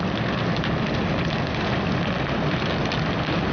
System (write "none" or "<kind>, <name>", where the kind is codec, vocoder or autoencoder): none